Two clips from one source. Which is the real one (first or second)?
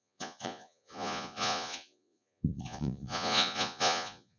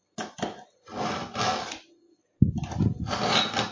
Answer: second